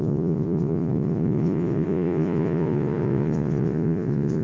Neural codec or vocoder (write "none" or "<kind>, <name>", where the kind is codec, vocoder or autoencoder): vocoder, Vocos